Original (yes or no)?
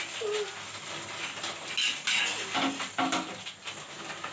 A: yes